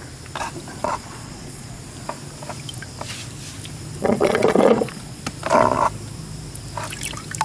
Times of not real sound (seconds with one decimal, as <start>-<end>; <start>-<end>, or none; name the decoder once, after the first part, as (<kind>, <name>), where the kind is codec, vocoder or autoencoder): 0.8-1.8 (vocoder, Vocos); 4.0-5.2